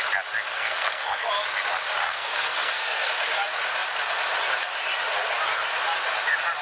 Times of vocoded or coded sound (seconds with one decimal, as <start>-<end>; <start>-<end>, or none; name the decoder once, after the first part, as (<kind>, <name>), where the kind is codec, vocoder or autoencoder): 0.5-1.3 (codec, SNAC); 2.0-3.1